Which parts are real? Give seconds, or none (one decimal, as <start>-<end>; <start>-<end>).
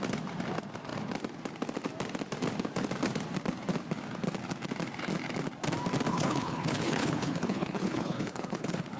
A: 0.0-6.1